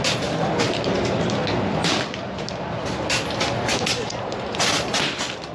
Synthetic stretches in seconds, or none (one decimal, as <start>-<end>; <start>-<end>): none